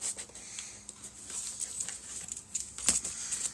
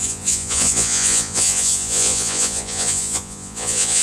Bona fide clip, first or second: first